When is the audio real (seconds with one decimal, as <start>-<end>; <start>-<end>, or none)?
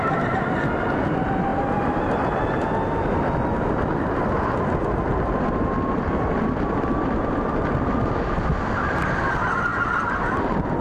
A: 0.0-10.8